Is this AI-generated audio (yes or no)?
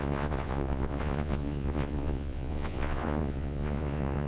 yes